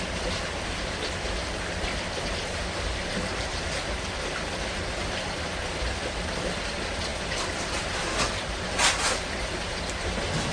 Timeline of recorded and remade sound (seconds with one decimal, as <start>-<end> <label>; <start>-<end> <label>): 0.0-10.5 recorded